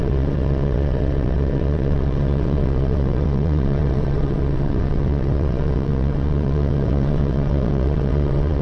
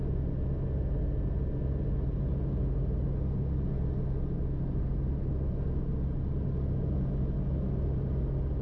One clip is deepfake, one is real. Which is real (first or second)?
second